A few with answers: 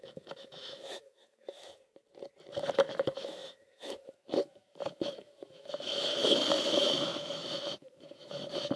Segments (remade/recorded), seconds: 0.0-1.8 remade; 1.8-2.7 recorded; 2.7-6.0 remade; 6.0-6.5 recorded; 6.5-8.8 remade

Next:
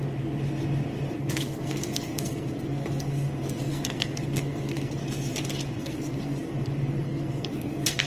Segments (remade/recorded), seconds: 0.0-1.2 recorded; 1.2-5.0 remade; 5.0-5.8 recorded; 5.8-8.1 remade

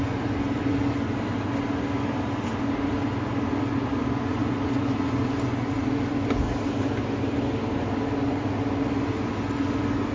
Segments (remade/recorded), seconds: 0.0-10.1 recorded

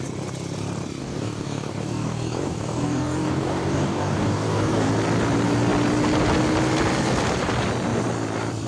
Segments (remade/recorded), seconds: 0.0-1.0 recorded; 1.0-4.9 remade; 4.9-8.7 recorded

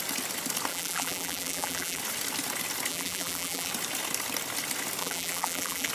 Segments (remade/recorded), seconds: 0.0-0.7 recorded; 0.7-2.0 remade; 2.0-2.9 recorded; 2.9-3.7 remade; 3.7-5.0 recorded; 5.0-5.9 remade

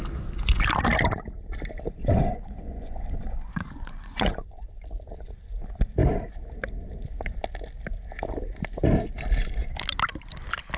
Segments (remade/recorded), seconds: 0.0-2.0 recorded; 2.0-4.8 remade; 4.8-10.8 recorded

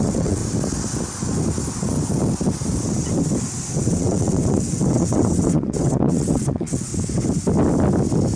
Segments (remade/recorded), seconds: 0.0-0.4 remade; 0.4-3.7 recorded; 3.7-6.9 remade; 6.9-8.4 recorded

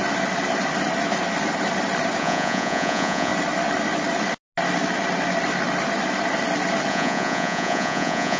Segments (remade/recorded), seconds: 0.0-2.2 recorded; 2.2-3.3 remade; 3.3-6.9 recorded; 6.9-8.4 remade